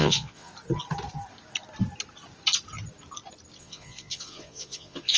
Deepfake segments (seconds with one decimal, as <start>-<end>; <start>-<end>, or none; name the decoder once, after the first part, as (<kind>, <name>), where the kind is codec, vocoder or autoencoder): 0.0-0.5 (vocoder, Vocos); 3.6-5.2